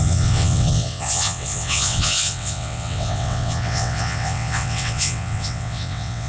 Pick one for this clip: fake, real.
fake